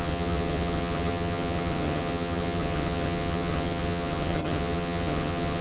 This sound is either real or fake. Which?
fake